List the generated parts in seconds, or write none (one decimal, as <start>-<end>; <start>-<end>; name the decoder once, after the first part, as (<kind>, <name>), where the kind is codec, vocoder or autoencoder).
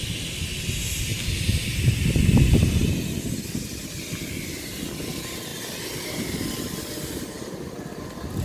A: none